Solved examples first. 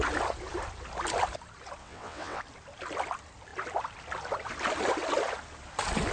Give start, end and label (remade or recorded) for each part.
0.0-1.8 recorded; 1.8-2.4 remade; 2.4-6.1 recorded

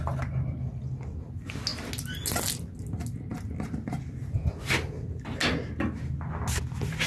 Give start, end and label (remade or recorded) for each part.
0.0-7.1 recorded

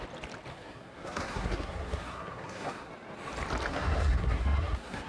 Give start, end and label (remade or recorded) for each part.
0.0-0.5 recorded; 0.5-2.9 remade; 2.9-3.7 recorded; 3.7-5.1 remade

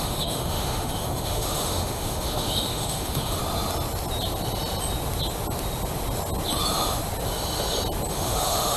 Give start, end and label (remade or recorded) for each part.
0.0-3.4 remade; 3.4-8.1 recorded; 8.1-8.8 remade